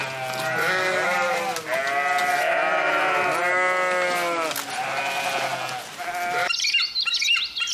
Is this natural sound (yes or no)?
yes